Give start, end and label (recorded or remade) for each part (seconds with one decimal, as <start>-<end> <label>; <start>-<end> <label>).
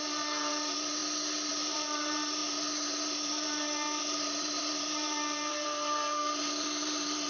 0.0-1.0 remade; 1.0-1.5 recorded; 1.5-7.3 remade